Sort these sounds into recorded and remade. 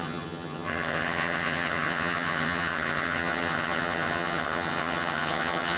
remade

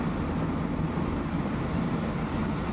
recorded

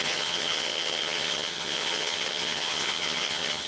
remade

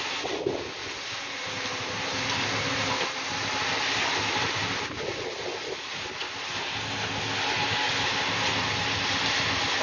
recorded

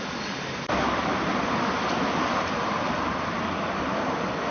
recorded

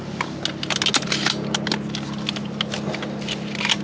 recorded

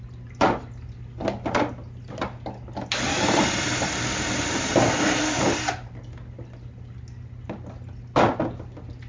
recorded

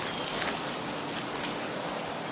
recorded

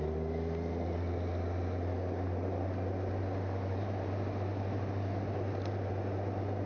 recorded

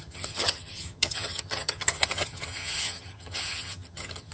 remade